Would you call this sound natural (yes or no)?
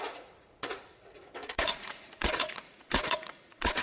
no